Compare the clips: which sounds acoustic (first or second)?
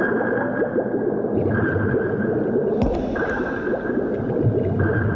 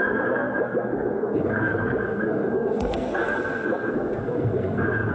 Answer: first